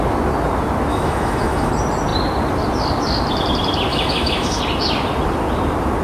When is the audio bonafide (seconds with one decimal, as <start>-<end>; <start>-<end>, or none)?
0.0-0.9; 1.7-3.9; 4.6-6.0